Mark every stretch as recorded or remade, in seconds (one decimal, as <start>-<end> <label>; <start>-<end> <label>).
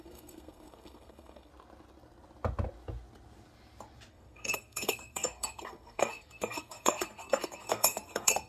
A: 0.0-1.5 remade; 1.5-4.1 recorded; 4.1-8.5 remade